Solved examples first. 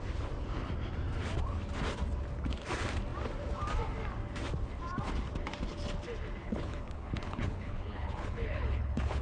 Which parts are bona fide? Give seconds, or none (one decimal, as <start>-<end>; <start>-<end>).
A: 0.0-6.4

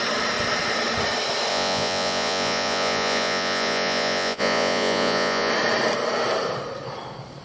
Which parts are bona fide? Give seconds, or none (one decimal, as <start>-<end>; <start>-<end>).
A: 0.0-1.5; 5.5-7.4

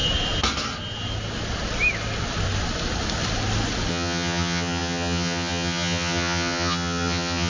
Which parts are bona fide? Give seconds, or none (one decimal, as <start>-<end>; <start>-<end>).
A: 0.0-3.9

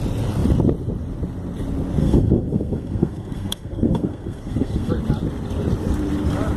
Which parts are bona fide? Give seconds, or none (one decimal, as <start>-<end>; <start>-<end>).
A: 0.0-2.0; 4.9-6.6

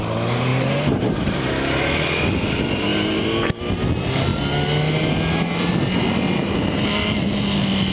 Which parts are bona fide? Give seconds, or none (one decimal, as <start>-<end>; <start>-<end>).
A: 0.0-0.5; 1.9-2.9; 3.6-7.9